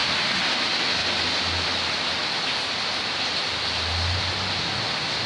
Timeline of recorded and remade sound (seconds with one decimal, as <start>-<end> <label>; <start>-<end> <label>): 0.0-1.0 recorded; 1.0-4.2 remade; 4.2-5.3 recorded